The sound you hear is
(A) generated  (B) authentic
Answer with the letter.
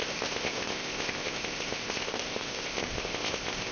A